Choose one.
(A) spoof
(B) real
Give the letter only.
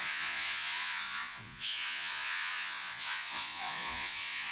A